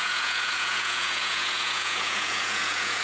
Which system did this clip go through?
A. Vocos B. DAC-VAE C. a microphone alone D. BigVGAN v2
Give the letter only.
A